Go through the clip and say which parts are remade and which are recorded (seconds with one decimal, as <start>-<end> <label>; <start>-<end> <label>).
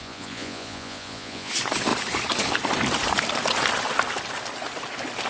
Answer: 0.0-1.5 remade; 1.5-5.3 recorded